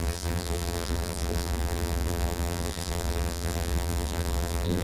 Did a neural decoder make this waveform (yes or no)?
yes